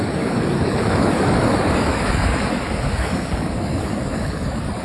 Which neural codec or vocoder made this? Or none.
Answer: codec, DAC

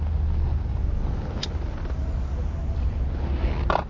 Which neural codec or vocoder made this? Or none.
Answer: none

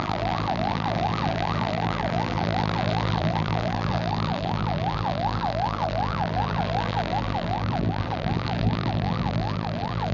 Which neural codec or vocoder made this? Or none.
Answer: vocoder, BigVGAN v2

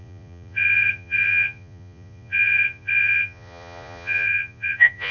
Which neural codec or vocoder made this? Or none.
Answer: vocoder, Vocos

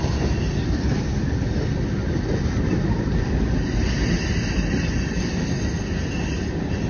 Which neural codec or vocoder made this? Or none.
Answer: none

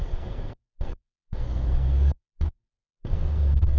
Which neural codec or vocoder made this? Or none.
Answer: codec, SNAC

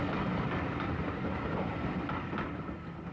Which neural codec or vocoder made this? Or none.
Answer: none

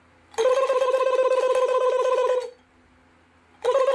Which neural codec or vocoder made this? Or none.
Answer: none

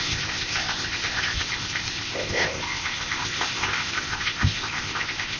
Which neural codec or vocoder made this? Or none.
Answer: codec, ZipCodec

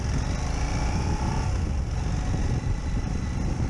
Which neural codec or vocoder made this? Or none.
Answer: none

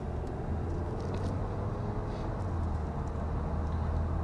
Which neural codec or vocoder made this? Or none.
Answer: none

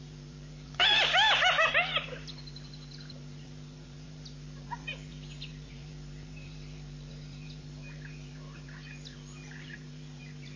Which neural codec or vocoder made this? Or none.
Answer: vocoder, BigVGAN v2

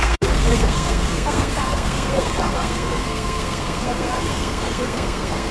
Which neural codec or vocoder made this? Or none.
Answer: codec, SNAC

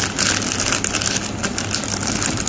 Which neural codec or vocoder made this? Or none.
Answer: none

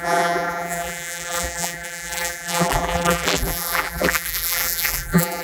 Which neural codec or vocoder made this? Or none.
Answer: vocoder, BigVGAN v2